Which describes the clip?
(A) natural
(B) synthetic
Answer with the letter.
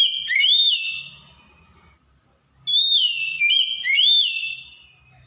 A